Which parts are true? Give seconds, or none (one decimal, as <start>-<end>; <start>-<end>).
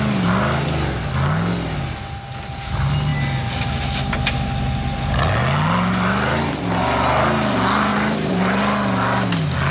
0.0-7.9; 8.6-9.7